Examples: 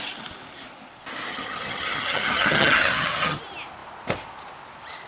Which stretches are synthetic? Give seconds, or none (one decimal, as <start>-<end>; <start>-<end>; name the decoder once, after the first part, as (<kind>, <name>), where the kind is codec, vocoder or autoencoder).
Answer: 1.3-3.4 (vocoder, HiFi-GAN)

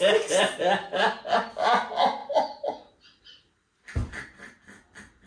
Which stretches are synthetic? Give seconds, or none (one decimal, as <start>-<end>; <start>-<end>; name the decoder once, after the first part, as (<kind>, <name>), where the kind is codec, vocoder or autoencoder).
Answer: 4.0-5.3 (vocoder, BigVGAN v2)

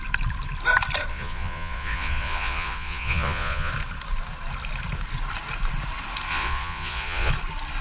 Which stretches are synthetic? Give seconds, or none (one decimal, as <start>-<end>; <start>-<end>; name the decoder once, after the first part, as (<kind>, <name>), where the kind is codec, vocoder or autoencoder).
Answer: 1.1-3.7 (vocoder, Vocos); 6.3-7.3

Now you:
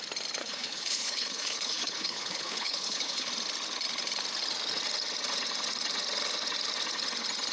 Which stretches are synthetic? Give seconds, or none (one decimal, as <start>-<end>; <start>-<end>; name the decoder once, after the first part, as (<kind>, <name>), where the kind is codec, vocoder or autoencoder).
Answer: 0.4-3.3 (codec, HILCodec)

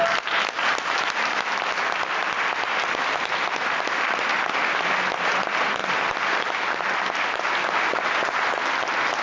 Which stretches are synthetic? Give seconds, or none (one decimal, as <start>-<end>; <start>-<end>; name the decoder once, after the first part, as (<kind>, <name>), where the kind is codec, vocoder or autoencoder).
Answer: none